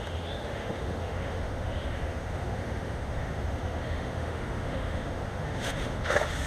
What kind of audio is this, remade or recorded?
remade